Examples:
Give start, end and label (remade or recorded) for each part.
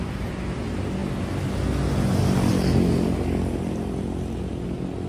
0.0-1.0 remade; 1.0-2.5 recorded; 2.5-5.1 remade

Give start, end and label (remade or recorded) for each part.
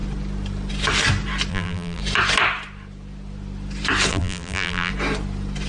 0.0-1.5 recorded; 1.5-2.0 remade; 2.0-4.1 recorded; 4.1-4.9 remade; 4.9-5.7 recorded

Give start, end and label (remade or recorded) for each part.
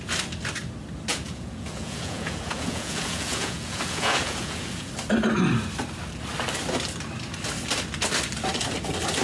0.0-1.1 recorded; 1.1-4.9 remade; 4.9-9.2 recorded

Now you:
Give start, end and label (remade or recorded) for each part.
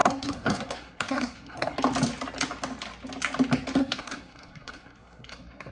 0.0-1.7 remade; 1.7-3.8 recorded; 3.8-5.7 remade